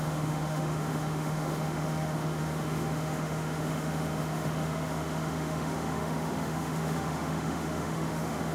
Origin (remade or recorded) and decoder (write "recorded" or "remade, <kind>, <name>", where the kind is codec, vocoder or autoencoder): remade, autoencoder, DAC-VAE